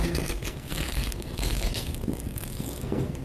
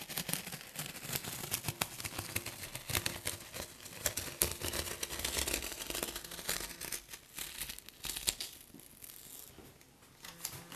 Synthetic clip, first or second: first